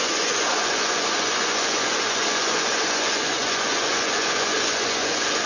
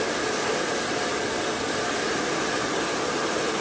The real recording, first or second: second